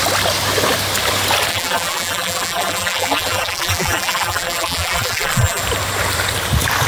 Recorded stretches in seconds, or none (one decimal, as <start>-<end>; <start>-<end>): 0.0-1.5; 5.6-6.9